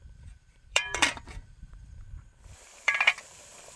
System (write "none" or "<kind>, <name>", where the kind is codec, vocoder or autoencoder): vocoder, BigVGAN v2